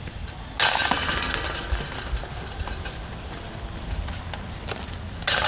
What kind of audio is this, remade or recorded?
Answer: recorded